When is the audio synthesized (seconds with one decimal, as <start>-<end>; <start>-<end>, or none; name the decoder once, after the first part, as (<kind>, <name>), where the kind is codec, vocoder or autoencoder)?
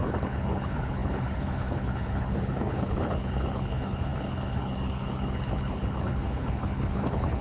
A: 0.0-7.4 (codec, HILCodec)